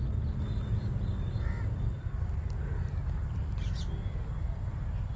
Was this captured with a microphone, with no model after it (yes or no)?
yes